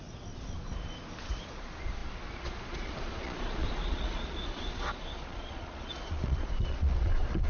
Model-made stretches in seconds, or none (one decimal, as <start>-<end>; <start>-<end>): 1.5-7.5